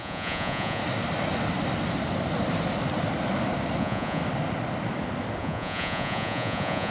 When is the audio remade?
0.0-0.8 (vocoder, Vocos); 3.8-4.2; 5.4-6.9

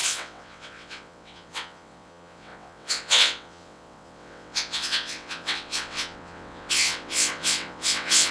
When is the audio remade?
0.0-8.3 (vocoder, WaveNeXt)